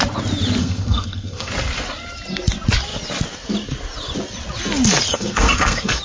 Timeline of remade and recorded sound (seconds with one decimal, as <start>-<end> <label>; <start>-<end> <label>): 0.0-0.6 recorded; 0.6-1.5 remade; 1.5-5.1 recorded; 5.1-6.0 remade